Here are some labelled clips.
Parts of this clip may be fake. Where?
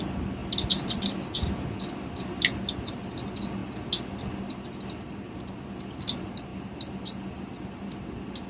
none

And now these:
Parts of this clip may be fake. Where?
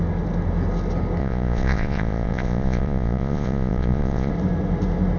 1.2-4.3 (vocoder, Vocos)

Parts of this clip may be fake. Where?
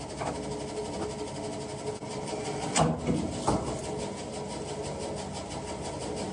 none